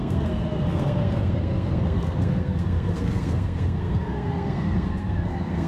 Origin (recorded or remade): remade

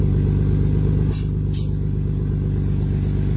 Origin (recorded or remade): recorded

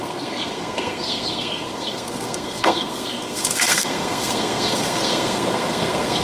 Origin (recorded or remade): remade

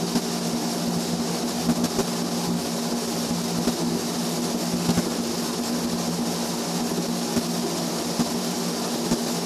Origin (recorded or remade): recorded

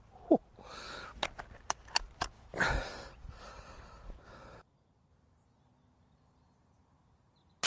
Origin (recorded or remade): recorded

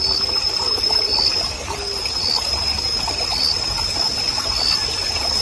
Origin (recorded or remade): recorded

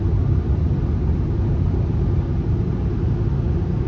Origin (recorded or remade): recorded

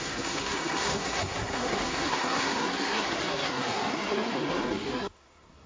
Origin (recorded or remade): remade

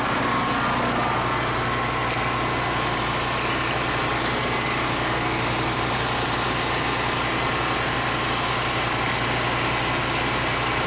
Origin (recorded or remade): recorded